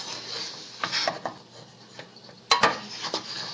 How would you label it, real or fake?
real